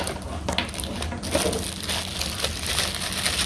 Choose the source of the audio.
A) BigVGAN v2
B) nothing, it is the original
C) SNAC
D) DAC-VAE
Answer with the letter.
B